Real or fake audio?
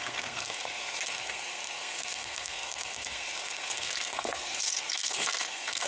fake